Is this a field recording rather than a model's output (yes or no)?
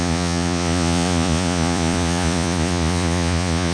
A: no